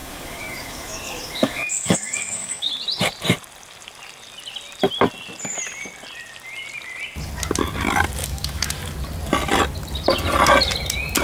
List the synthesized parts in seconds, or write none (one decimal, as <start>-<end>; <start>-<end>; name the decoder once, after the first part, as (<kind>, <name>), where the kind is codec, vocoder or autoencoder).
0.0-2.7 (codec, DAC); 8.2-8.7